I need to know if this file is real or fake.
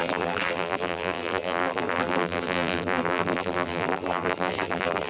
fake